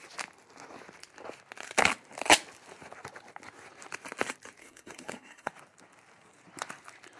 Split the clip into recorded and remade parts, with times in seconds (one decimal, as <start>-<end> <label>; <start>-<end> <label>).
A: 0.0-4.6 recorded; 4.6-5.5 remade; 5.5-7.2 recorded

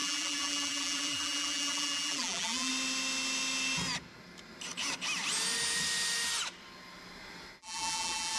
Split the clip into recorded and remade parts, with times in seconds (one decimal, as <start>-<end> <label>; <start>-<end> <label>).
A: 0.0-2.7 remade; 2.7-7.6 recorded; 7.6-8.4 remade

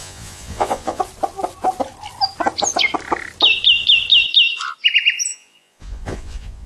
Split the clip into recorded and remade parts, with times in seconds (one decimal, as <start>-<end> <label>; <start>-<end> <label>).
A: 0.0-1.0 remade; 1.0-5.3 recorded; 5.3-6.7 remade

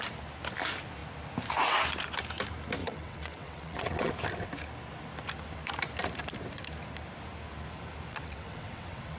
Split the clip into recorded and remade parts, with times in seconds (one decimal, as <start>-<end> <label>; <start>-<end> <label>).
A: 0.0-2.8 recorded; 2.8-4.1 remade; 4.1-8.1 recorded; 8.1-9.2 remade

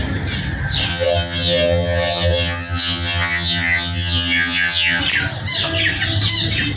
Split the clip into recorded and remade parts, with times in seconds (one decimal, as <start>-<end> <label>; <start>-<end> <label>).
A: 0.0-0.9 recorded; 0.9-5.0 remade; 5.0-6.8 recorded

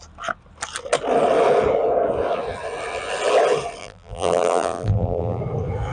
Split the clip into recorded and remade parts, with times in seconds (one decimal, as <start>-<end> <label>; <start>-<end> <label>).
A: 0.0-3.8 recorded; 3.8-5.4 remade; 5.4-5.9 recorded

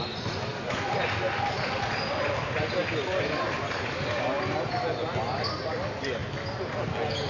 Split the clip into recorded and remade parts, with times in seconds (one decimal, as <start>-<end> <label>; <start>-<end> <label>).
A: 0.0-7.3 recorded